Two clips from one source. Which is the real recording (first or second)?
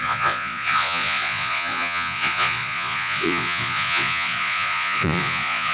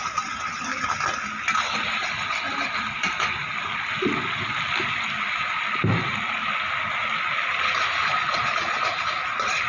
second